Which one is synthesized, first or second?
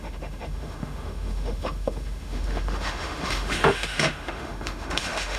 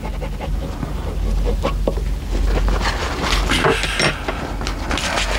first